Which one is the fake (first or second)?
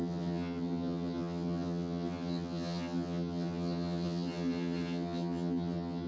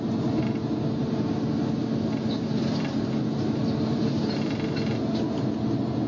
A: first